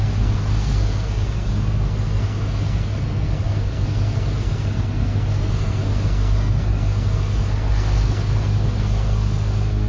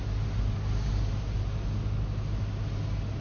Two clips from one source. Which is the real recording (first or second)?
second